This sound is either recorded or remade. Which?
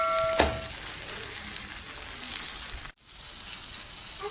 recorded